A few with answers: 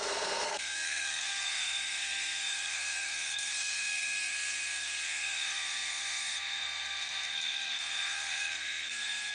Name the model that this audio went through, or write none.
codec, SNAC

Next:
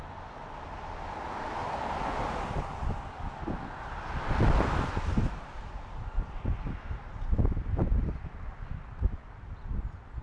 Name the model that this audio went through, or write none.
none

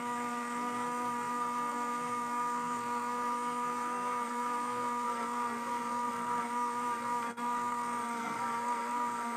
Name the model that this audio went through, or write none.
codec, SNAC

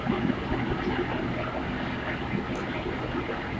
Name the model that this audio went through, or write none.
none